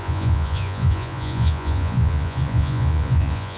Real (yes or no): no